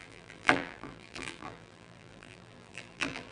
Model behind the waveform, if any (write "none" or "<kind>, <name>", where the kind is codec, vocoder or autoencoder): vocoder, BigVGAN v2